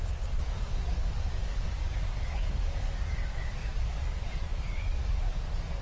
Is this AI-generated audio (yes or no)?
yes